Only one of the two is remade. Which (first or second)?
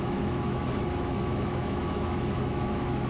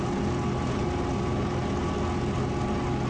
first